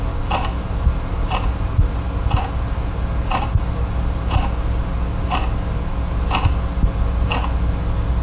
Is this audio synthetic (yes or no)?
no